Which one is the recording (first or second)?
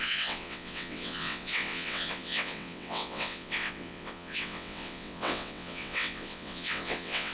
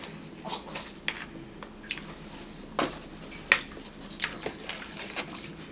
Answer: second